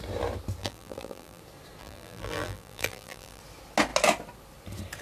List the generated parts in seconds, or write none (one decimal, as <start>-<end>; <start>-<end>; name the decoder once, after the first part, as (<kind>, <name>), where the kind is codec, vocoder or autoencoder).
0.6-1.4 (vocoder, BigVGAN v2); 1.8-3.4